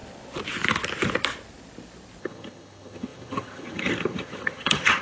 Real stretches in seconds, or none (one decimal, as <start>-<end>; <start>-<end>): 0.0-2.2